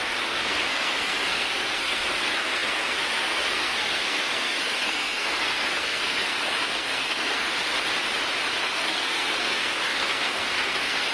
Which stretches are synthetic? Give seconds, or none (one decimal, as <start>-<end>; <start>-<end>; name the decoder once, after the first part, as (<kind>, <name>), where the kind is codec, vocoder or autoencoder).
0.0-7.7 (codec, SNAC); 8.6-11.1